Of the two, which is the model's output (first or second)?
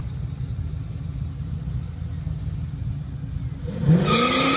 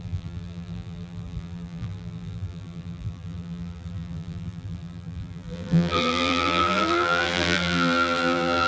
second